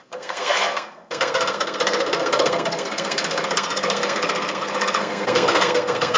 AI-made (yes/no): yes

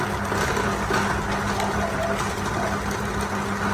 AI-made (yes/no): no